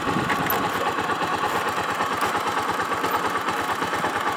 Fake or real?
real